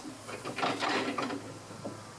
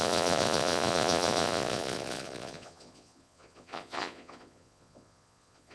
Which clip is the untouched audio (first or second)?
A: first